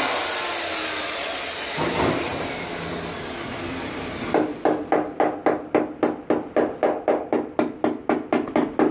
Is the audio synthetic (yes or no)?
no